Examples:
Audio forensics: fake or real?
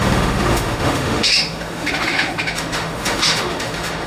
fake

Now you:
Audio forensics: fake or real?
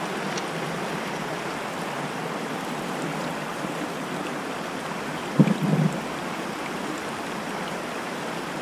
real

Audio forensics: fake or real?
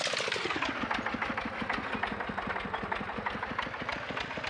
real